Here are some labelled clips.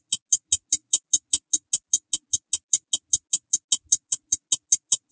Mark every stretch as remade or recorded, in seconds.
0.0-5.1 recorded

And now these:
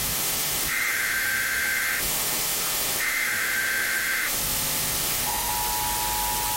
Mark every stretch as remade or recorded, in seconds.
0.0-5.5 remade; 5.5-6.6 recorded